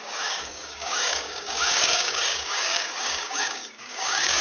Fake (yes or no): yes